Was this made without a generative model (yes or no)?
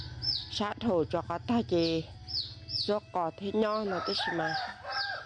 yes